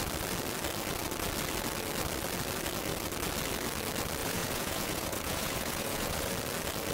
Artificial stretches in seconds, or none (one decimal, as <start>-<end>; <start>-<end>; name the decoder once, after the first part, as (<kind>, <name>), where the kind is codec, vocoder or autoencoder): 4.2-6.3 (vocoder, Vocos)

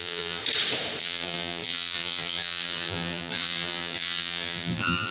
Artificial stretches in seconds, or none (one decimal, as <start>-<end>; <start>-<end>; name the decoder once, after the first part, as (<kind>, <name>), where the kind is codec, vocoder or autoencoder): 0.0-0.4 (vocoder, BigVGAN v2); 1.0-5.1